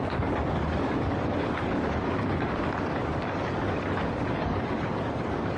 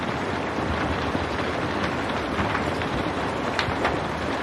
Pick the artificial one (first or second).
first